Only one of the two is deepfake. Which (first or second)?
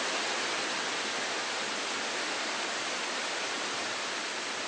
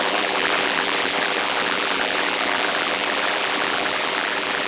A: second